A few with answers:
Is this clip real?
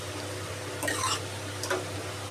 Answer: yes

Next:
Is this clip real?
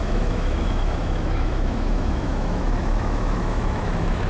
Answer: no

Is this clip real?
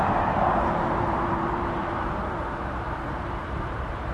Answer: no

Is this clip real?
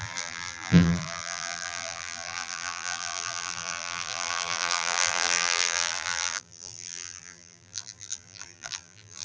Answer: no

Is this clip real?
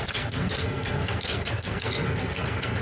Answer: no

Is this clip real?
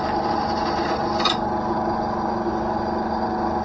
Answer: yes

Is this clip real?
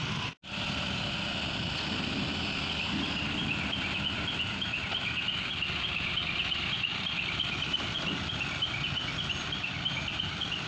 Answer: yes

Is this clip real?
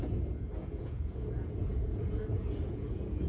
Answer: no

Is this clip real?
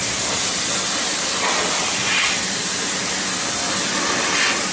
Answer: yes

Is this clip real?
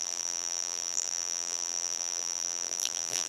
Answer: no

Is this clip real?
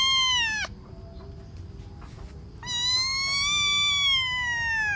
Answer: yes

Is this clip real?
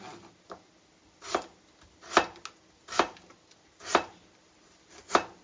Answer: yes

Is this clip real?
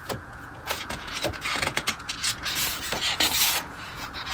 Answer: no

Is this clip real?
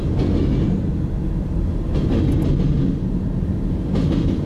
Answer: yes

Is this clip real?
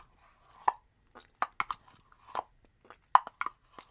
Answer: yes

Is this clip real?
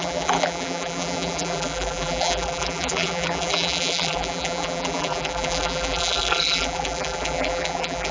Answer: no